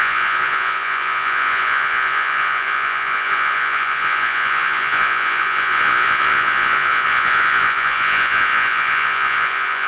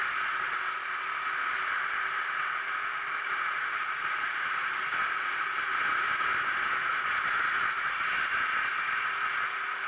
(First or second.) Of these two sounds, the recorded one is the second